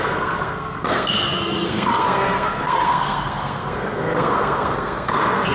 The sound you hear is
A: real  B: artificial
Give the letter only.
B